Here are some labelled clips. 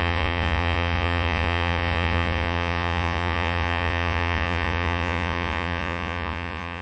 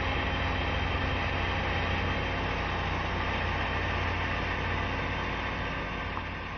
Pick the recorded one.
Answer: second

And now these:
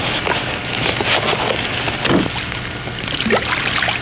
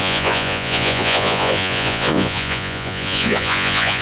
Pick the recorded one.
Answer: first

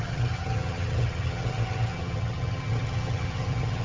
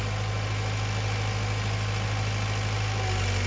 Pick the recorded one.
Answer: second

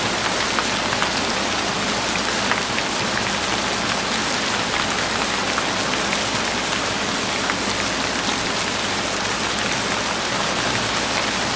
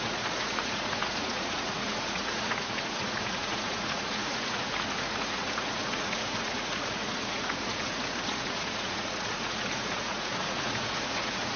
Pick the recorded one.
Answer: first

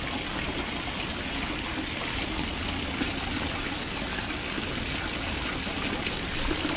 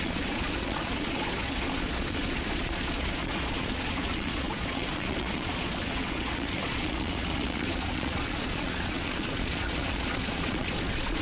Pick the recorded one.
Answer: first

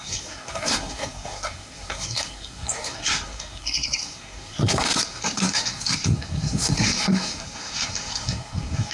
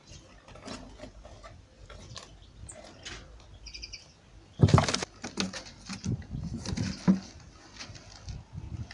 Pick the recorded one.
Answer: second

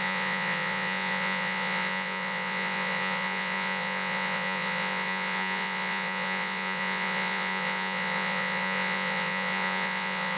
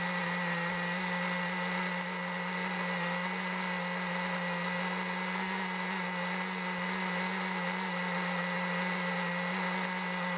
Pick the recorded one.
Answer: second